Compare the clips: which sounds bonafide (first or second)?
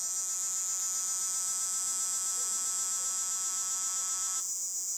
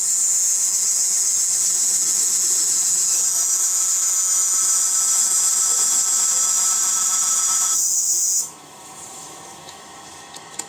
first